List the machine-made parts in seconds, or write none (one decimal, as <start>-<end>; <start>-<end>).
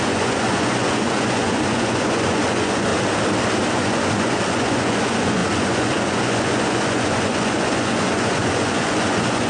0.0-2.9; 3.7-9.5